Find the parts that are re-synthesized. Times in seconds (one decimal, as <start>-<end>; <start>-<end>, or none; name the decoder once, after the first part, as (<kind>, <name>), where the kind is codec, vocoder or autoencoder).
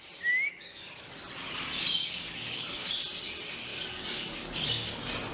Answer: 0.5-1.1 (codec, DAC); 2.0-2.9; 3.7-4.6